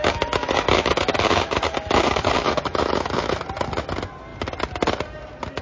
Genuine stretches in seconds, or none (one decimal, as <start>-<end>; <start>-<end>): 3.4-5.6